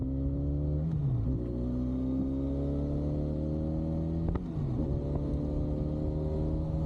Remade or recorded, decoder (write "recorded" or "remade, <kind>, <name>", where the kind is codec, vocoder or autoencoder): recorded